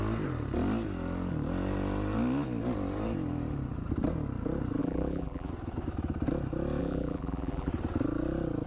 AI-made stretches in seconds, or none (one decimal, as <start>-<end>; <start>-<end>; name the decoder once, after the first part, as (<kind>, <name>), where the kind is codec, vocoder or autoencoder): 4.8-5.5 (vocoder, BigVGAN v2); 6.8-7.7